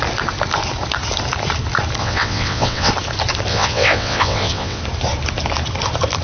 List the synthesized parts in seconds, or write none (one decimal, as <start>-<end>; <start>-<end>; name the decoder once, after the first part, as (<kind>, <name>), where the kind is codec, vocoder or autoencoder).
2.0-2.9 (vocoder, WaveNeXt); 3.5-4.8